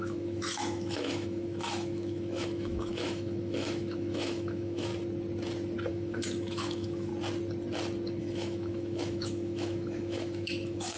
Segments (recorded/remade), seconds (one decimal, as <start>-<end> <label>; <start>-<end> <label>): 0.0-4.9 remade; 4.9-5.9 recorded; 5.9-7.1 remade; 7.1-8.2 recorded; 8.2-11.0 remade